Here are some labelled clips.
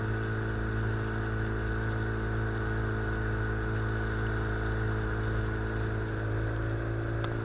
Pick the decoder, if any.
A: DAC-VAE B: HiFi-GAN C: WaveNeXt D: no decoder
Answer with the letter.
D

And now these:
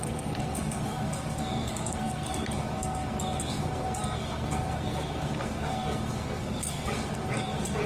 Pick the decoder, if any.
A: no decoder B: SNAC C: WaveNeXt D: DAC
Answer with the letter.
B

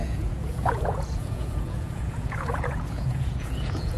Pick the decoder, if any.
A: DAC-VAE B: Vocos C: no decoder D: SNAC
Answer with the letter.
B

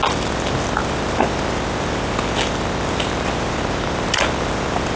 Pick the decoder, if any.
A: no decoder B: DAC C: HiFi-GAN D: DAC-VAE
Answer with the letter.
A